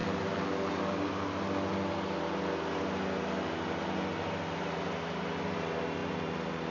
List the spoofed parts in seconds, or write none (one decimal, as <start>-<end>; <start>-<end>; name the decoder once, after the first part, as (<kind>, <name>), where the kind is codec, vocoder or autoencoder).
0.0-1.1 (vocoder, BigVGAN v2)